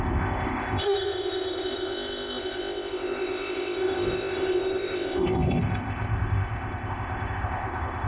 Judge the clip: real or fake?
fake